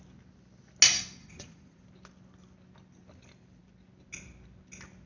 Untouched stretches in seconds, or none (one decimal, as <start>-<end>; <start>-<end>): 0.0-1.2; 1.8-5.1